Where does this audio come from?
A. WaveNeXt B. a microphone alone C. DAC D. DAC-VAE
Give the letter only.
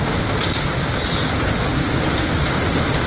B